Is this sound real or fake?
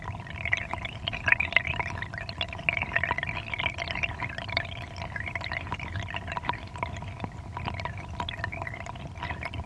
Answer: real